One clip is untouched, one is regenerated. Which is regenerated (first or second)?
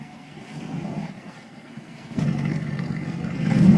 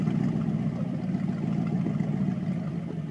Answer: first